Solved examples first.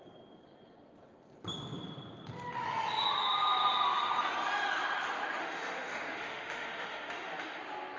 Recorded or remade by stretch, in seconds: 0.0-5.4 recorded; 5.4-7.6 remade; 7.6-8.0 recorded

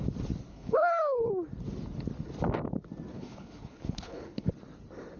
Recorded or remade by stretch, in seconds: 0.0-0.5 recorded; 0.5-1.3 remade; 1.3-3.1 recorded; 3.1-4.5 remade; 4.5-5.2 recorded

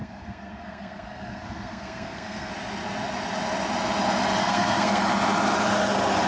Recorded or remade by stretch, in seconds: 0.0-2.5 remade; 2.5-4.4 recorded; 4.4-5.0 remade; 5.0-6.3 recorded